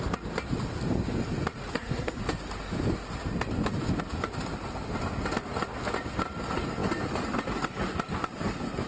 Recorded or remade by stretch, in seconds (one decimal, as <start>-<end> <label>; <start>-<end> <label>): 0.0-1.7 recorded; 1.7-2.2 remade; 2.2-8.9 recorded